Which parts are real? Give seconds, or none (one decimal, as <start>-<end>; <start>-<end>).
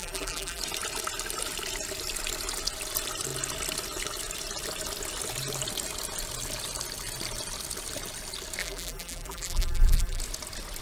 0.6-8.6; 10.2-10.8